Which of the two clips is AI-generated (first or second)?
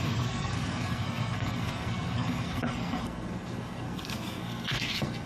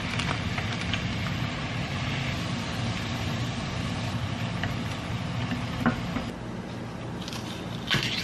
first